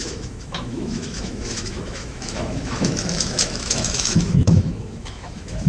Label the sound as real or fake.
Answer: fake